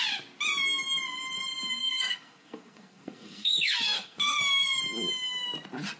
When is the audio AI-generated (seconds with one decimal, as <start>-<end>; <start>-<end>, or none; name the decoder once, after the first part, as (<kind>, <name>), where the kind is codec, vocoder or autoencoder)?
1.8-4.8 (codec, SNAC)